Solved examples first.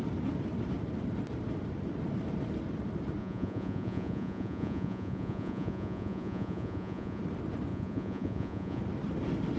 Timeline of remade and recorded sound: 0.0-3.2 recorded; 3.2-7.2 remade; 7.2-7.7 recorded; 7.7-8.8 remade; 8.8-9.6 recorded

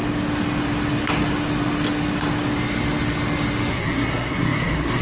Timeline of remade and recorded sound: 0.0-3.7 recorded; 3.7-5.0 remade